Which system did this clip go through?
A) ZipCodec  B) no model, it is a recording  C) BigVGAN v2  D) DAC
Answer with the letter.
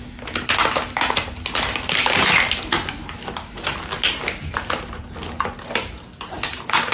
B